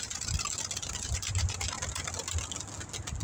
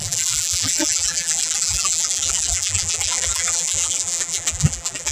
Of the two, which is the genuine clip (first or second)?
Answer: first